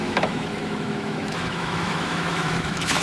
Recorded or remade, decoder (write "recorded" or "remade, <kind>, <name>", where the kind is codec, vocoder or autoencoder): remade, autoencoder, DAC-VAE